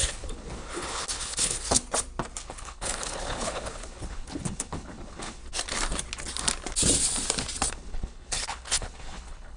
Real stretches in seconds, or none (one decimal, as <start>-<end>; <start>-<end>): 1.8-2.4; 5.4-7.7